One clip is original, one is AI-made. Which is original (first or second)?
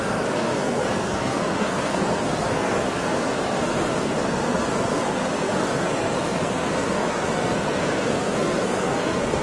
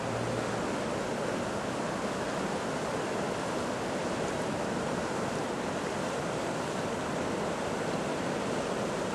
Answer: second